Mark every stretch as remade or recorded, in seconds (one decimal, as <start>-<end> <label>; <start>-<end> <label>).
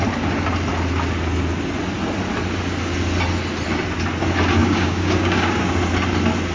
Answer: 0.0-4.6 recorded; 4.6-5.7 remade; 5.7-6.5 recorded